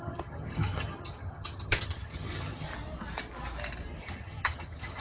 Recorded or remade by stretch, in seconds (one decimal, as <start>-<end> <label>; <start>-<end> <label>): 0.0-2.7 remade; 2.7-4.0 recorded; 4.0-5.0 remade